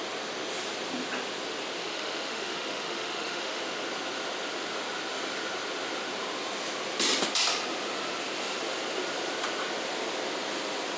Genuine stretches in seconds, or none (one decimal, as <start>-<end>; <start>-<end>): 0.0-1.8; 3.6-11.0